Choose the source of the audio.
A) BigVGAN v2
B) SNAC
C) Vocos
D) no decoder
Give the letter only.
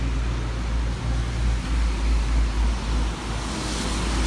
D